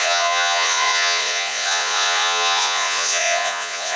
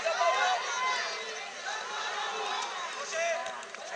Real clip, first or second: second